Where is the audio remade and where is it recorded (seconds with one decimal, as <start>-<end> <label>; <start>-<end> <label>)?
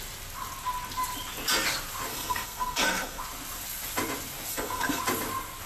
0.0-2.1 recorded; 2.1-3.2 remade; 3.2-4.5 recorded; 4.5-5.0 remade; 5.0-5.7 recorded